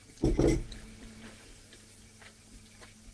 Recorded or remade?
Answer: recorded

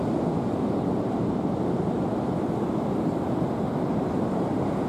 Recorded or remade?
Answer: recorded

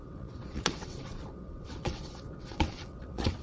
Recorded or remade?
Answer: remade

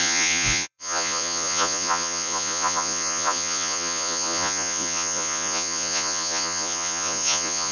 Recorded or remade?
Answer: remade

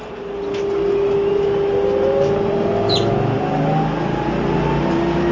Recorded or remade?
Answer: recorded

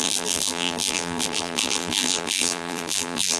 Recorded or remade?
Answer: remade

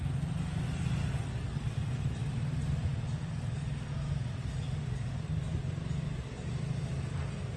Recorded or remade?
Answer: recorded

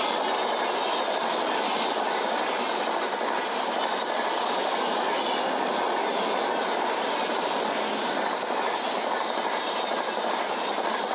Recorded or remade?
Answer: recorded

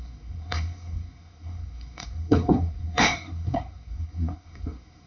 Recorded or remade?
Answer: remade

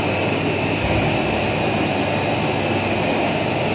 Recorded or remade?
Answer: recorded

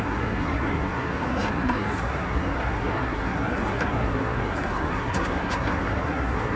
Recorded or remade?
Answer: remade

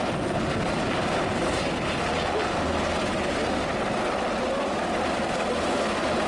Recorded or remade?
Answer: recorded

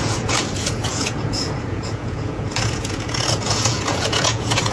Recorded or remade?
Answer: remade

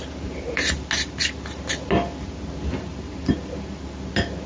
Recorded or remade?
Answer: recorded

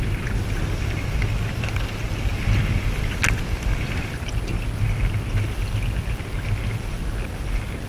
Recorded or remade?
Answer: recorded